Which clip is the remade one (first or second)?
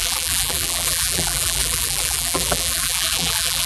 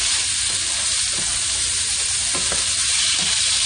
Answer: first